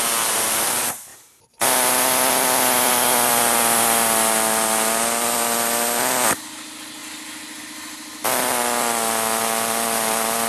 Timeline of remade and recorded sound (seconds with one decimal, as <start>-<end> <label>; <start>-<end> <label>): 0.0-10.5 recorded